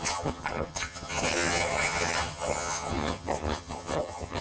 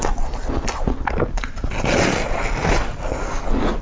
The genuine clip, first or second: second